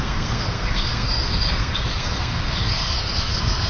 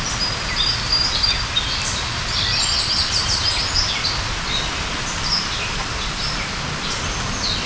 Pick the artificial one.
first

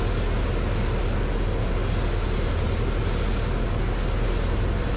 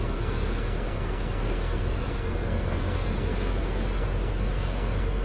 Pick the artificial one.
second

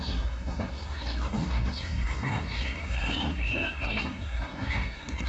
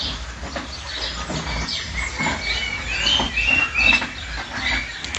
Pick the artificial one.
first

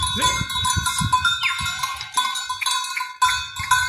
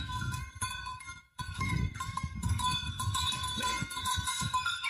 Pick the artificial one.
second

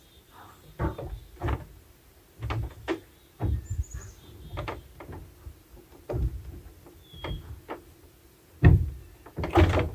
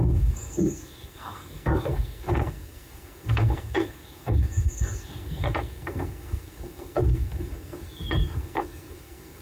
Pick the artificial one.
second